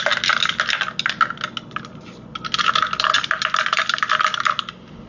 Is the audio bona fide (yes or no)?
yes